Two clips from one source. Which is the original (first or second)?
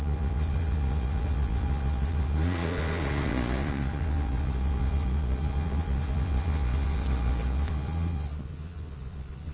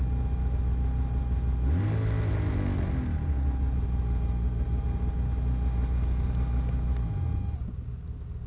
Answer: second